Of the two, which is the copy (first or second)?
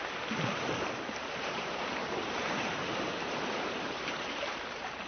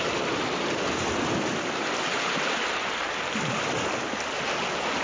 first